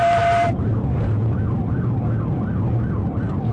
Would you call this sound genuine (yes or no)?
no